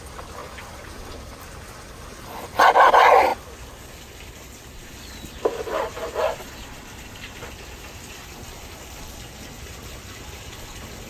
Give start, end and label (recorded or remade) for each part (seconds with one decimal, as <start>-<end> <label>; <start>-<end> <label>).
0.0-11.1 recorded